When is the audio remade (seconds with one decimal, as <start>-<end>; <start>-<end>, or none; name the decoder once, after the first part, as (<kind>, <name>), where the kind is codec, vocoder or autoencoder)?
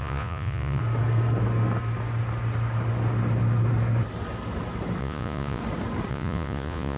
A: 0.0-0.8 (vocoder, Vocos); 5.0-5.6; 6.1-7.0